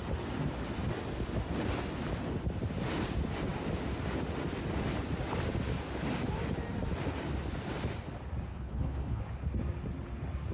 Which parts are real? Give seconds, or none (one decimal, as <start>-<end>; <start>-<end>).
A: 0.0-8.5; 9.2-10.5